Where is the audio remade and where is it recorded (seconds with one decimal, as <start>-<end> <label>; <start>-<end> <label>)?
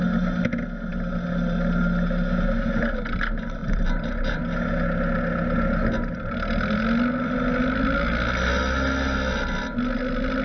0.0-3.6 recorded; 3.6-4.4 remade; 4.4-10.4 recorded